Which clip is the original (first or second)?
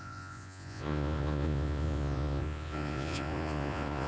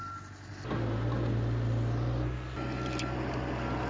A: second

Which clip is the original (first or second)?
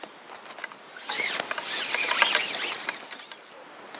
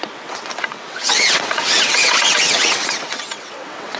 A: first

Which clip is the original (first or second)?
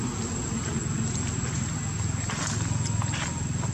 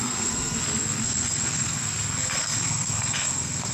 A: first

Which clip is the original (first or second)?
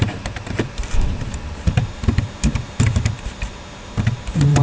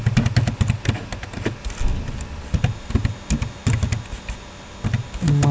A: second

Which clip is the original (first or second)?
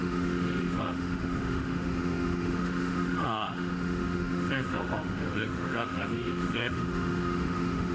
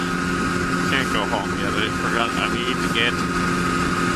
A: second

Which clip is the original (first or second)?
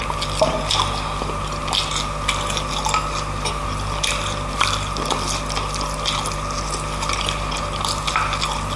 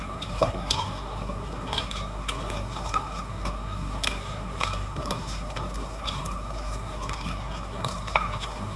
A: first